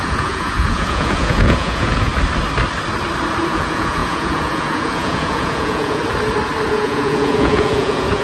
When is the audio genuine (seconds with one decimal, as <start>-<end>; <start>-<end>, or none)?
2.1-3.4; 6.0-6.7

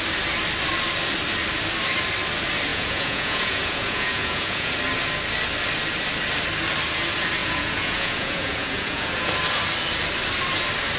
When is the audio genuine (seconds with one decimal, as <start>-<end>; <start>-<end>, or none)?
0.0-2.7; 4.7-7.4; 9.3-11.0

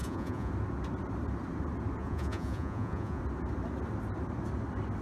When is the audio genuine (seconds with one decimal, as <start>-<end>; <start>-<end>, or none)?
0.5-2.0; 3.2-5.0

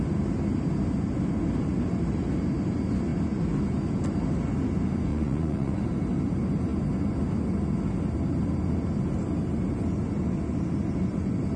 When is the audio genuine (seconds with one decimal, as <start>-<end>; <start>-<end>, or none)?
0.0-5.1; 5.8-11.6